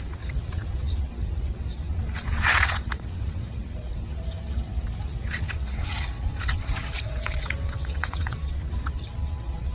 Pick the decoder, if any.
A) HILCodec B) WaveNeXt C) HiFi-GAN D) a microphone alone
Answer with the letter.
B